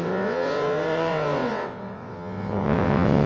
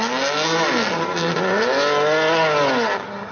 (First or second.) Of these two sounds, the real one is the second